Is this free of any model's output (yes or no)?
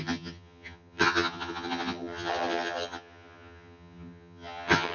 no